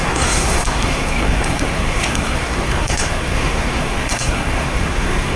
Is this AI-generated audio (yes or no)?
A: yes